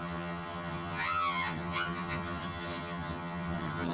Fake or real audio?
fake